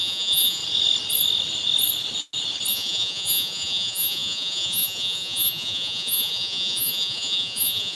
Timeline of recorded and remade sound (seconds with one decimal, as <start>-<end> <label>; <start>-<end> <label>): 0.0-0.6 remade; 0.6-2.7 recorded; 2.7-8.0 remade